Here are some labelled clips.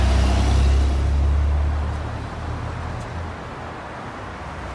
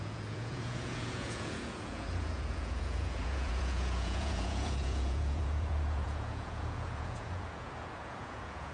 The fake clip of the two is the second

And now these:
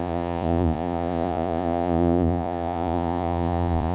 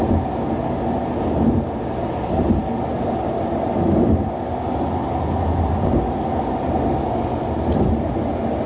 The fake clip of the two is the first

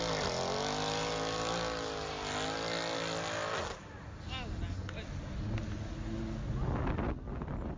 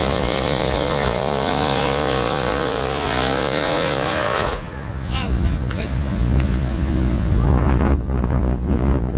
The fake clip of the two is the second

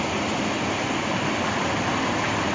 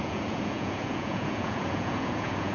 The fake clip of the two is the second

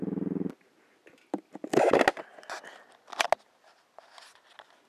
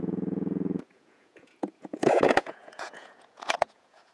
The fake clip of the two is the second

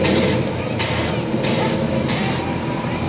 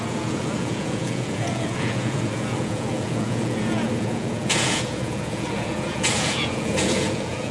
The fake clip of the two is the second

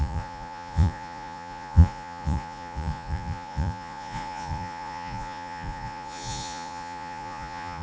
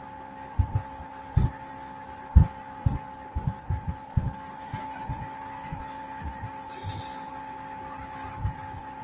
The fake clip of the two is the first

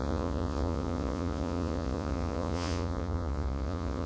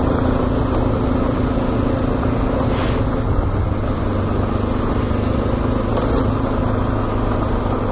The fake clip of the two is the first